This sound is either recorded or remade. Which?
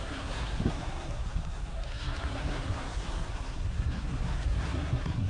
remade